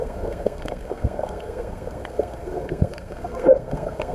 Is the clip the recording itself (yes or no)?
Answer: no